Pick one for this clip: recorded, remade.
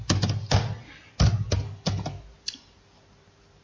recorded